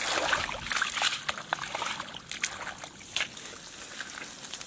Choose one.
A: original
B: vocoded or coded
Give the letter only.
A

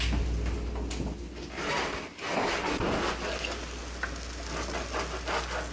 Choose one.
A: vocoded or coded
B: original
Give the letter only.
B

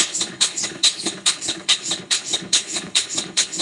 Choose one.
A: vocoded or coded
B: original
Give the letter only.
A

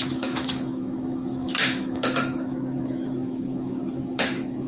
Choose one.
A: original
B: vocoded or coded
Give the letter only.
B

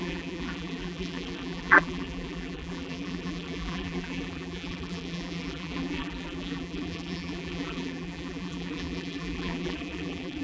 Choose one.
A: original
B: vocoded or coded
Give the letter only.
B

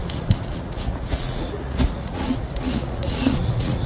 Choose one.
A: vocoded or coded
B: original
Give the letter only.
A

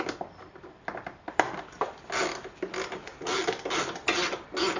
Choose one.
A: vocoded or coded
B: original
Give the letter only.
B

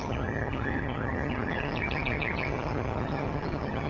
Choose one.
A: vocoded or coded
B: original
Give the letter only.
A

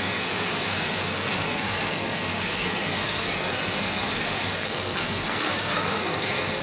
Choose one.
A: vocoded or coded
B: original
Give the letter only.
A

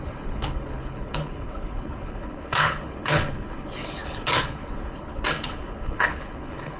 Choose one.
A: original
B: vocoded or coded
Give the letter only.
B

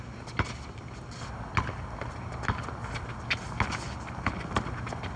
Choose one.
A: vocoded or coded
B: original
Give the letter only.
B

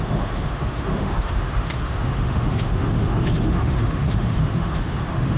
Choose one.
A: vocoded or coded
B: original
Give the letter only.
A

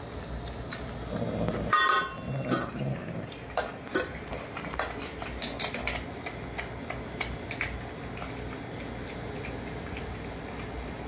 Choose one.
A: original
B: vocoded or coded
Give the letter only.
A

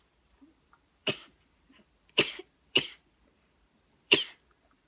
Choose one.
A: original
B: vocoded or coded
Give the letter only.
B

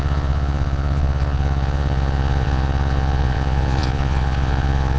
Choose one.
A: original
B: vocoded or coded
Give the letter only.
B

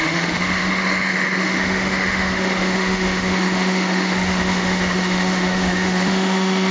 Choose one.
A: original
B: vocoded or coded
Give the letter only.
B